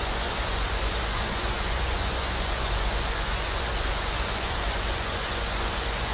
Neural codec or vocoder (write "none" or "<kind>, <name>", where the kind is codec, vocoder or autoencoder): vocoder, Vocos